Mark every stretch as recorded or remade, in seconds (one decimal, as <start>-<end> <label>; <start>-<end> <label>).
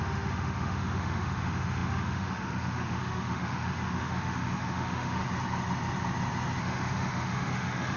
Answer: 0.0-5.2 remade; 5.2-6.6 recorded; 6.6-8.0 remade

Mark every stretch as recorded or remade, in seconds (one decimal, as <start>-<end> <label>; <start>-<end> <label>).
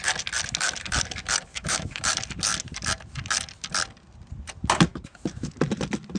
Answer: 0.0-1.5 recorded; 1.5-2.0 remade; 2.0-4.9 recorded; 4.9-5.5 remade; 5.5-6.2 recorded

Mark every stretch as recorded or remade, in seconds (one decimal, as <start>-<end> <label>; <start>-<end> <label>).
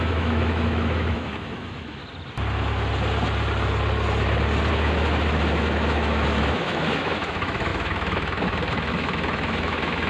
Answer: 0.0-2.0 remade; 2.0-4.7 recorded; 4.7-10.1 remade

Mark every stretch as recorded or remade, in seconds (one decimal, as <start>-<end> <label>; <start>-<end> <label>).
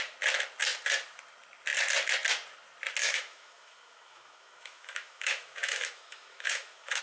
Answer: 0.0-3.0 recorded; 3.0-7.0 remade